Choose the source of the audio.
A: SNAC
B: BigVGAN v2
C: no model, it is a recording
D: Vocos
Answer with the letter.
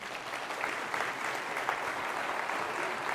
C